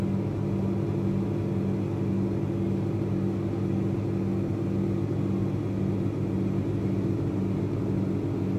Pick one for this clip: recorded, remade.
recorded